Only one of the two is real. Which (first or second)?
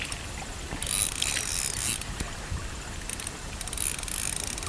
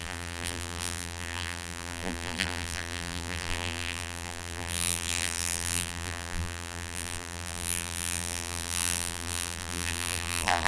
first